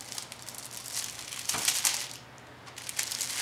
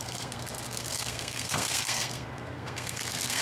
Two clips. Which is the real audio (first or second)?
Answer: first